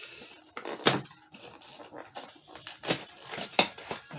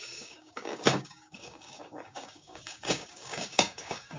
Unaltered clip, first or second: first